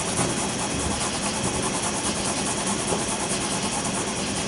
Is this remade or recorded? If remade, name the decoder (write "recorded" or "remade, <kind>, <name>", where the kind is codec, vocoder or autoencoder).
remade, vocoder, BigVGAN v2